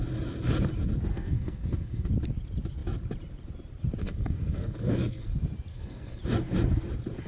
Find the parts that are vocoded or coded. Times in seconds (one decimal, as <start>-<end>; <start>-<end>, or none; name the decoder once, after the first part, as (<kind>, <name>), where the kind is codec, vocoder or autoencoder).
1.1-2.1 (codec, SNAC); 4.0-5.3; 5.7-6.2